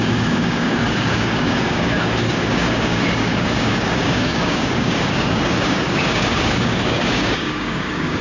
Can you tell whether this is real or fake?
fake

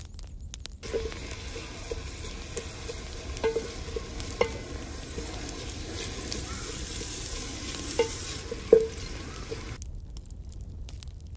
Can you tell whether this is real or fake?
real